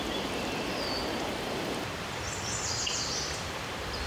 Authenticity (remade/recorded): remade